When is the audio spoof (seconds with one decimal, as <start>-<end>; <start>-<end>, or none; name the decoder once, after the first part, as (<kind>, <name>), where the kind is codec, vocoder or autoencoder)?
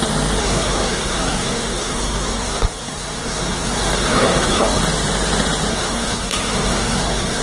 0.4-4.8 (codec, SNAC); 5.7-7.4